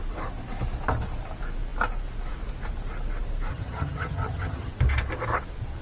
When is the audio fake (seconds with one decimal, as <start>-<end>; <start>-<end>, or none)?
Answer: 3.5-4.7